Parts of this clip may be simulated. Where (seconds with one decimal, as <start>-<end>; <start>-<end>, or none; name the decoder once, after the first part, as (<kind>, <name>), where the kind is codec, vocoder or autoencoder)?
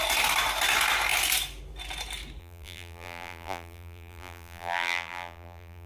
2.4-5.9 (vocoder, BigVGAN v2)